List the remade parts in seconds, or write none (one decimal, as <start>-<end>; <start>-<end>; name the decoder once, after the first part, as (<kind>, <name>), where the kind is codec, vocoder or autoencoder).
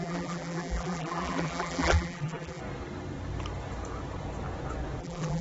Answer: 0.0-2.6 (vocoder, BigVGAN v2); 5.0-5.4